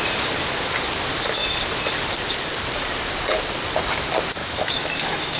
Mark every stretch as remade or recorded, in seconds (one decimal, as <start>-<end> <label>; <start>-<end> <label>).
0.0-4.4 recorded; 4.4-5.4 remade